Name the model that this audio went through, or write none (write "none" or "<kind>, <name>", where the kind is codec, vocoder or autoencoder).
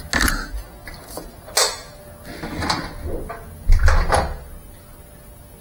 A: none